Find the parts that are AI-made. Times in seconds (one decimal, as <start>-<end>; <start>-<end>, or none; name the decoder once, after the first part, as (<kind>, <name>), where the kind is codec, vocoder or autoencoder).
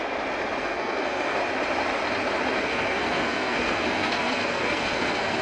0.6-1.4 (codec, SNAC); 2.6-5.4